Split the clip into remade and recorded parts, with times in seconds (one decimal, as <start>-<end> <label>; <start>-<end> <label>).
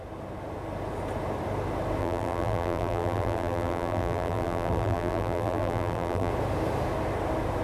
0.0-2.0 recorded; 2.0-6.3 remade; 6.3-7.6 recorded